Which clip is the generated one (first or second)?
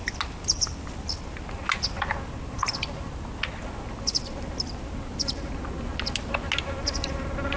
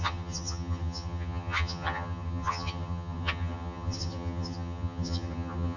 second